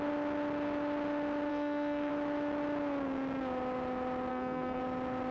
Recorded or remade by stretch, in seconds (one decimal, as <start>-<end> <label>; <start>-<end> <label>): 0.0-1.5 recorded; 1.5-2.1 remade; 2.1-4.3 recorded; 4.3-4.8 remade; 4.8-5.3 recorded